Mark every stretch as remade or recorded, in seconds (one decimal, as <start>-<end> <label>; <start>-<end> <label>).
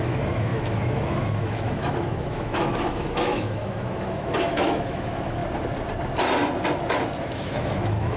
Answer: 0.0-5.4 remade; 5.4-7.2 recorded; 7.2-8.2 remade